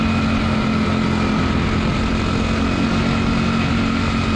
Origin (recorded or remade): recorded